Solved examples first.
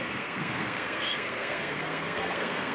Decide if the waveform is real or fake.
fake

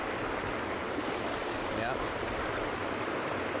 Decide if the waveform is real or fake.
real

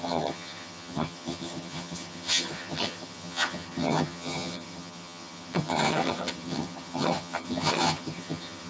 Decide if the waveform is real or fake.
fake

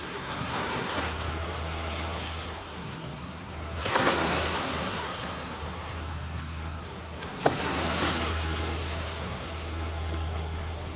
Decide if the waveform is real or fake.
fake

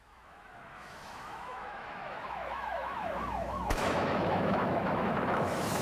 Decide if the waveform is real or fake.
fake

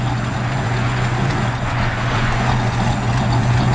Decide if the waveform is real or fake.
fake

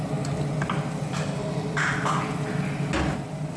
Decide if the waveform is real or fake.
real